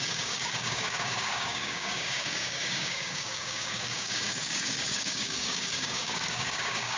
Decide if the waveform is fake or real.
fake